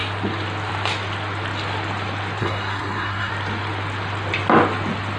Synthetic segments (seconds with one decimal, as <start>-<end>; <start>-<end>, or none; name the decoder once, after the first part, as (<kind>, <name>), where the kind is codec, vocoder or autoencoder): 2.4-3.3 (codec, SNAC)